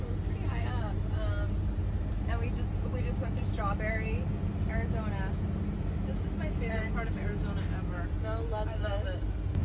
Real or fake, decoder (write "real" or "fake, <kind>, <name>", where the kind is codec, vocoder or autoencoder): real